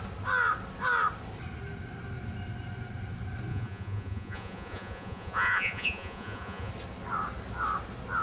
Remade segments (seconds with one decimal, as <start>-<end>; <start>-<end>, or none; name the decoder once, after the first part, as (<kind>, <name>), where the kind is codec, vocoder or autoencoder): 3.5-6.7 (vocoder, Vocos)